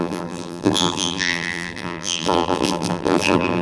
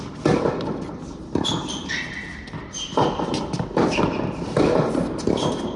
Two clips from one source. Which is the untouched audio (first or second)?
second